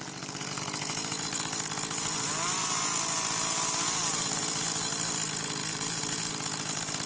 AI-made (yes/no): no